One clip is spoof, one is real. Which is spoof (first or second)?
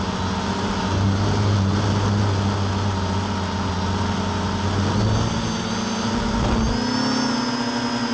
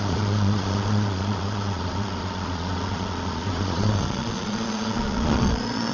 second